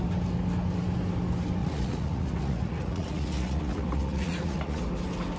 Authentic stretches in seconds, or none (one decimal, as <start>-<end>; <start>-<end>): 0.0-1.6; 4.8-5.4